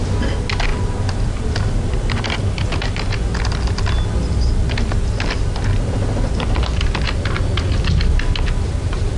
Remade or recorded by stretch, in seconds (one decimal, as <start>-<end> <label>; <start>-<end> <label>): 0.0-0.7 recorded; 0.7-2.2 remade; 2.2-6.7 recorded; 6.7-7.8 remade; 7.8-9.2 recorded